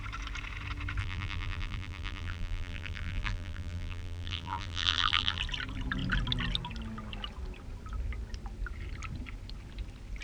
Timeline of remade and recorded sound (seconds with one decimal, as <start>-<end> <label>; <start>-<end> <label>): 0.0-1.0 recorded; 1.0-5.4 remade; 5.4-10.2 recorded